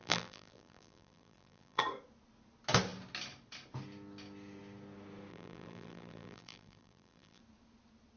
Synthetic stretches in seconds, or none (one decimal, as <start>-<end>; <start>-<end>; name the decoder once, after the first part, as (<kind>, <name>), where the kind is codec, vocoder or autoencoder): 0.0-1.8 (vocoder, BigVGAN v2); 5.3-7.4